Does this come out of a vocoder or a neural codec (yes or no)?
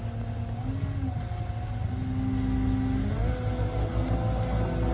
no